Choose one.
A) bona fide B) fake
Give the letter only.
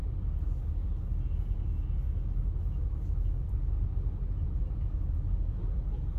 A